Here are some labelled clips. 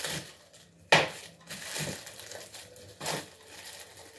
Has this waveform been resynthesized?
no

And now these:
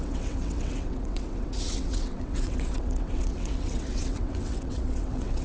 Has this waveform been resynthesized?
yes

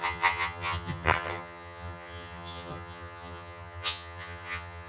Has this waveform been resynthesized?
yes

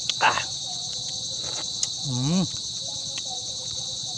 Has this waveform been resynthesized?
yes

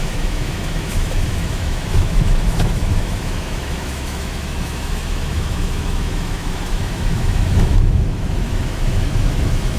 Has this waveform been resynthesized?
yes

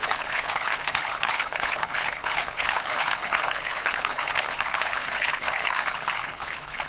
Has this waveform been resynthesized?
yes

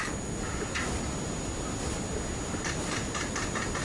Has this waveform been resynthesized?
no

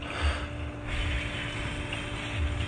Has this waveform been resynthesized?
no